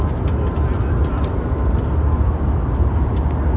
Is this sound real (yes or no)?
yes